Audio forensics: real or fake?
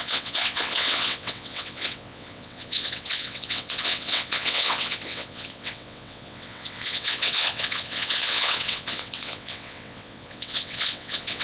fake